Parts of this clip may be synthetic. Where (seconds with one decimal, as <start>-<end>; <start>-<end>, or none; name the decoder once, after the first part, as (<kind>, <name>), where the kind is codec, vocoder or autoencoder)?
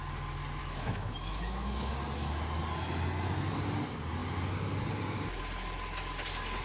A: 0.6-1.9 (autoencoder, DAC-VAE)